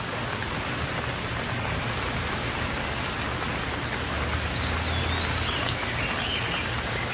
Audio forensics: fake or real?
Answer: real